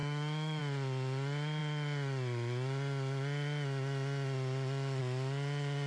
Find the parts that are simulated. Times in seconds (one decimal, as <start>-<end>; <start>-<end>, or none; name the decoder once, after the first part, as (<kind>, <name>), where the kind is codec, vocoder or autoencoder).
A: 0.0-0.6 (autoencoder, DAC-VAE)